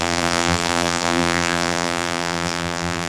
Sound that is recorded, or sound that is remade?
remade